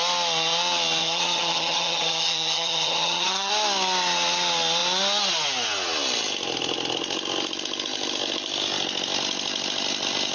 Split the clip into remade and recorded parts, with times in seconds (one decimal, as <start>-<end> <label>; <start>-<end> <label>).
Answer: 0.0-1.0 recorded; 1.0-3.5 remade; 3.5-10.3 recorded